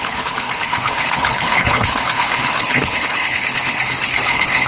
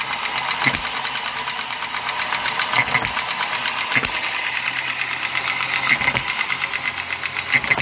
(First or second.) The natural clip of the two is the second